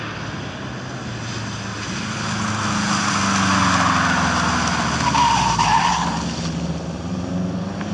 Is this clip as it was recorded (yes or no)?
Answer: yes